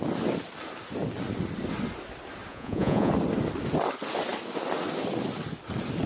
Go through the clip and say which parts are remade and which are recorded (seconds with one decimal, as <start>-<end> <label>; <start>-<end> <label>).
0.0-2.5 recorded; 2.5-3.1 remade; 3.1-6.1 recorded